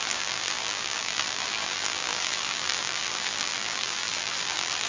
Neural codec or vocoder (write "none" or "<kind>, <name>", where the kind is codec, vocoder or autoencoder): vocoder, BigVGAN v2